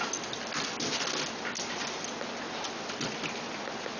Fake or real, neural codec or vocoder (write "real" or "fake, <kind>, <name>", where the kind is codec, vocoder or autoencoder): real